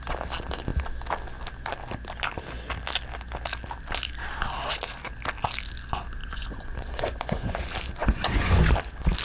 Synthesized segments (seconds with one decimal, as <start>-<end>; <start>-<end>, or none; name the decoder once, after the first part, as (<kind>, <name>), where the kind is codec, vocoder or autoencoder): 6.2-7.6 (vocoder, Vocos); 8.0-8.7

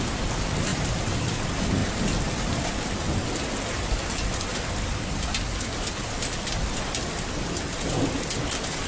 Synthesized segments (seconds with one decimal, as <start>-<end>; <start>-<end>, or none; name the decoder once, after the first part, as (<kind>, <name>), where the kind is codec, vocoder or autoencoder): none